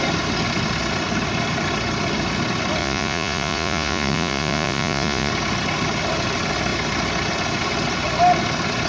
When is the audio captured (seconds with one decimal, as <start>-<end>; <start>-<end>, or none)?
0.0-2.8; 5.3-8.9